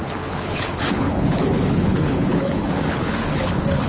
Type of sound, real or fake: fake